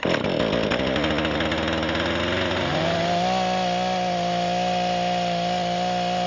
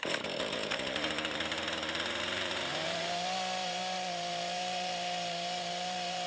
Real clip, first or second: first